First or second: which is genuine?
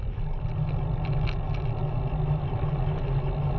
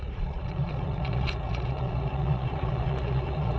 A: first